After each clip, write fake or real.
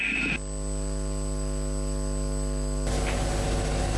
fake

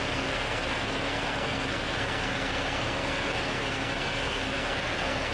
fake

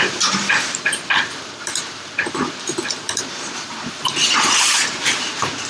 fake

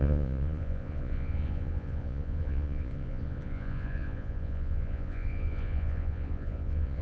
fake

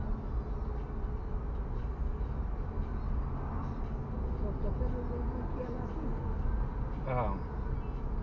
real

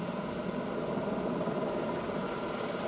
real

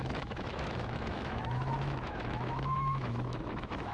fake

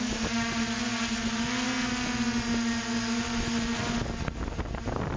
real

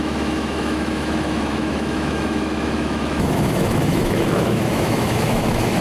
fake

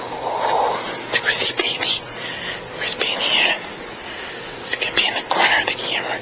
real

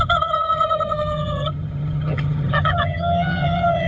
fake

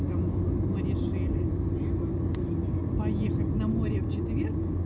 real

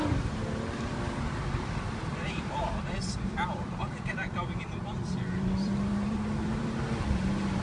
fake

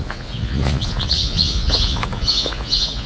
fake